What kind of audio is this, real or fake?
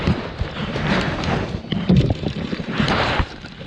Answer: fake